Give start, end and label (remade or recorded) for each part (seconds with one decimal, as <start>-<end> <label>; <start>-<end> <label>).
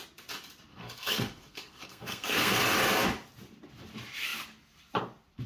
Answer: 0.0-0.7 recorded; 0.7-2.6 remade; 2.6-5.5 recorded